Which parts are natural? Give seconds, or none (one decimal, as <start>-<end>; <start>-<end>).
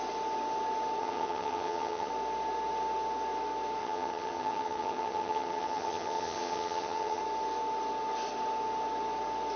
0.0-1.0; 2.1-3.8; 7.2-9.6